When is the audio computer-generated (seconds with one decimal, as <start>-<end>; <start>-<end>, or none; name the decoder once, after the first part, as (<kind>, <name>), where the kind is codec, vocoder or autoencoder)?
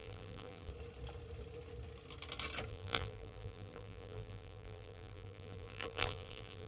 0.0-0.7 (vocoder, BigVGAN v2); 2.7-6.7